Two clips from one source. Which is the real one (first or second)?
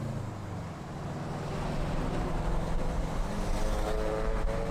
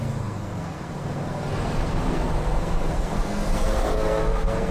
first